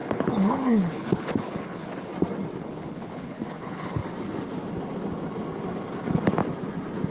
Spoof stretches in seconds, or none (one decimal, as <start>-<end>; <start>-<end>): 0.0-2.1; 2.6-4.0